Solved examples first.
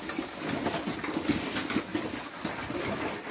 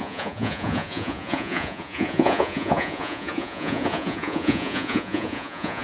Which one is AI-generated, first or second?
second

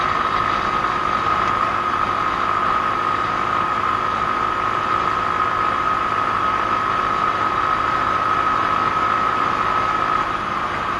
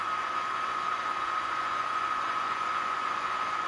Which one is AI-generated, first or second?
second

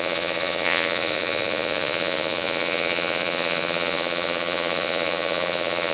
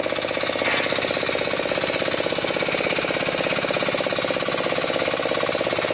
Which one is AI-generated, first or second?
first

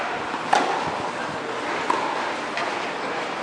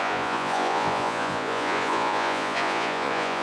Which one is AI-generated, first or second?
second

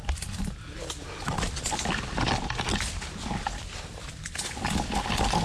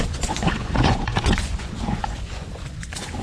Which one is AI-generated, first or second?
second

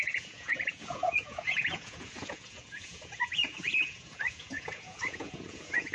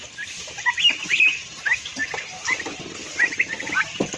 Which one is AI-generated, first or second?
first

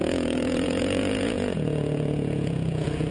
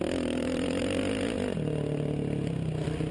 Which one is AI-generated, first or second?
first